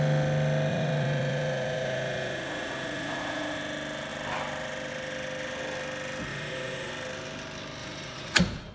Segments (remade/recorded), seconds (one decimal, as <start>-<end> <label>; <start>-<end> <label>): 0.0-0.7 recorded; 0.7-3.6 remade; 3.6-6.3 recorded; 6.3-6.9 remade; 6.9-7.8 recorded; 7.8-8.7 remade